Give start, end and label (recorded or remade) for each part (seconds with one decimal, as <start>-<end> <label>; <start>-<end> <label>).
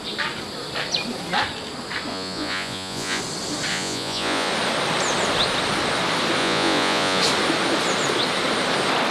0.0-2.1 recorded; 2.1-3.2 remade; 3.2-3.7 recorded; 3.7-4.5 remade; 4.5-6.4 recorded; 6.4-7.2 remade; 7.2-9.1 recorded